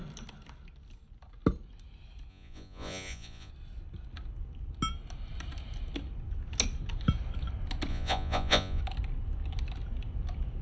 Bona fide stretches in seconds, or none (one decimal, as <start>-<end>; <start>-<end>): 0.0-2.3; 3.5-7.9; 8.8-10.6